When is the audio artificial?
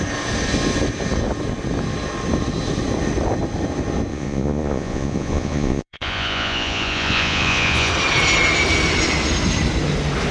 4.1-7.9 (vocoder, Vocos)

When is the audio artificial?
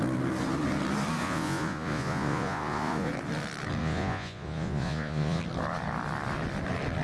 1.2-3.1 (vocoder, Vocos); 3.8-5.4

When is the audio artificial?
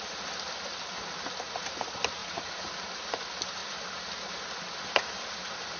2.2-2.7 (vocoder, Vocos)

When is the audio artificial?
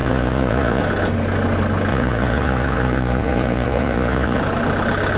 0.0-0.8 (vocoder, Vocos); 1.9-4.4